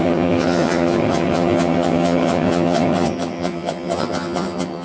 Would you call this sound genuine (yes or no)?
no